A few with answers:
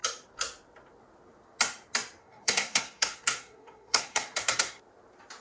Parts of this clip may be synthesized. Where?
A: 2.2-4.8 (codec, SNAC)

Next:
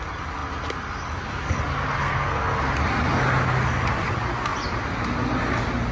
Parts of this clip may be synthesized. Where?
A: 2.0-2.6 (codec, SNAC)

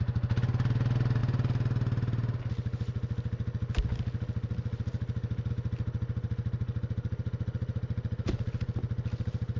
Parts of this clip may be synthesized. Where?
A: none

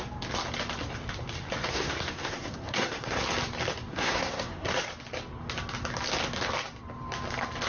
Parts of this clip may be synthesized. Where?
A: 1.6-3.2 (codec, SNAC); 3.9-4.7